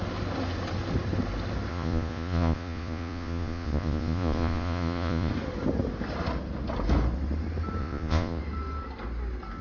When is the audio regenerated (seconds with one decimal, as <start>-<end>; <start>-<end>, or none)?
1.7-5.3; 7.8-8.4